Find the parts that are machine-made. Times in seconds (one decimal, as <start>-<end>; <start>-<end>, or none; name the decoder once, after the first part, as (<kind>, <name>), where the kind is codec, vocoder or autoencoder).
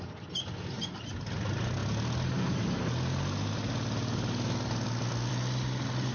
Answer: none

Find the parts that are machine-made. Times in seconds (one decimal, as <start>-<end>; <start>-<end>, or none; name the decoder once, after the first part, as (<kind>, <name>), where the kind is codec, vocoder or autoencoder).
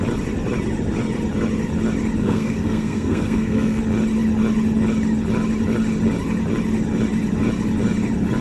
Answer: 2.2-3.8 (codec, SNAC)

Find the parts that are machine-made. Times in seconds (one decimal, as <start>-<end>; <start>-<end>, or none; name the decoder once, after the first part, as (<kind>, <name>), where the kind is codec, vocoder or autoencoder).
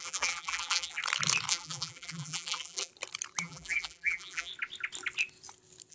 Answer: 0.0-1.0 (vocoder, BigVGAN v2); 1.5-2.9; 3.4-4.5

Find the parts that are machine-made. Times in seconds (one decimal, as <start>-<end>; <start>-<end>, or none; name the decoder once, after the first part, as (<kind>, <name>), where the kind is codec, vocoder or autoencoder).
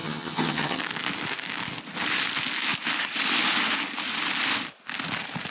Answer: 0.0-0.8 (vocoder, HiFi-GAN)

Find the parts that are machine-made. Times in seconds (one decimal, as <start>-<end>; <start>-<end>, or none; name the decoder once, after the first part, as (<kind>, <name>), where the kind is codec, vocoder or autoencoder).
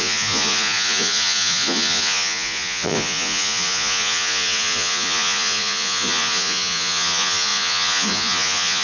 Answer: 0.0-8.8 (vocoder, Vocos)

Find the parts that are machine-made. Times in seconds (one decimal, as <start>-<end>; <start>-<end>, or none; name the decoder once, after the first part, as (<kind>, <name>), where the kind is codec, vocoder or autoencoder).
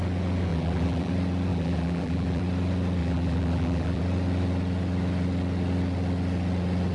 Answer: 0.5-1.1 (vocoder, BigVGAN v2); 1.5-2.4; 3.0-4.0